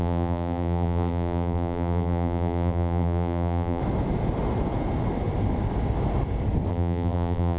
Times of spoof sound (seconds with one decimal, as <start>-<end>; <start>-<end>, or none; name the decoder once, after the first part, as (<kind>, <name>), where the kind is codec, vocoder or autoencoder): 0.0-3.8 (vocoder, BigVGAN v2); 6.7-7.6